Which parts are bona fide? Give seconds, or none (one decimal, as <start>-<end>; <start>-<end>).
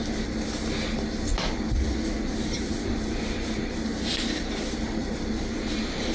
0.0-3.9; 4.5-6.1